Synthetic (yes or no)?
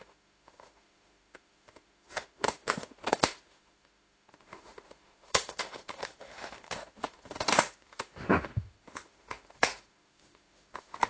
yes